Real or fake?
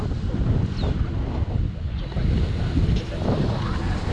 real